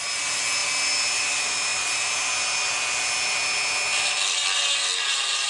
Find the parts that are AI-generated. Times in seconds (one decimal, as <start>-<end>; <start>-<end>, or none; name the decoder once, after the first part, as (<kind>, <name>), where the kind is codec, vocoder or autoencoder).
none